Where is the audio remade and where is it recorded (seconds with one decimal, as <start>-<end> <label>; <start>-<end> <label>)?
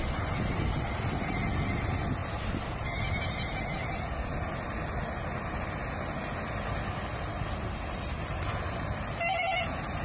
0.0-10.0 recorded